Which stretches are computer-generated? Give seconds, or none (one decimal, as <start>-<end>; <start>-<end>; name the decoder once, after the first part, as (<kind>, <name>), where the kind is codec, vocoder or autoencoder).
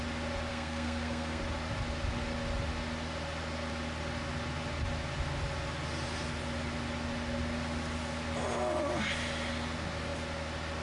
0.5-1.4 (codec, SNAC)